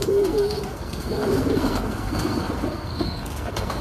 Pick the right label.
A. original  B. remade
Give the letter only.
B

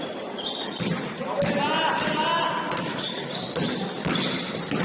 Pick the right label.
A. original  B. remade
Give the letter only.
A